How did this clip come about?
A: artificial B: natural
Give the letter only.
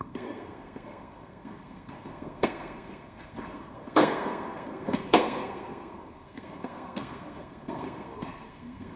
A